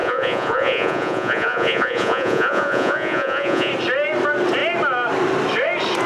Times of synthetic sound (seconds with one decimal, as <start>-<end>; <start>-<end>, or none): 0.0-3.7